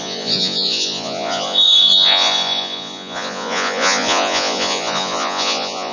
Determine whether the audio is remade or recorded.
remade